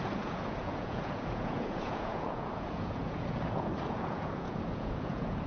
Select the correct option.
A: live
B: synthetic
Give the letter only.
B